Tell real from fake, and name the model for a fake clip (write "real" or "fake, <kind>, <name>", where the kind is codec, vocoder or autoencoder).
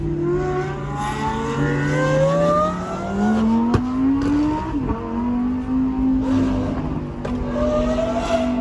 real